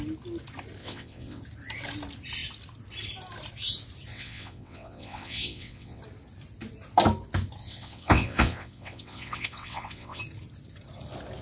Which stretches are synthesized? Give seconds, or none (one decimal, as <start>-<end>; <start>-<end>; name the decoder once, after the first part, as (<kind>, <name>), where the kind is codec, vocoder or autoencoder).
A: 0.8-1.4 (vocoder, WaveNeXt); 4.1-6.0; 7.6-10.2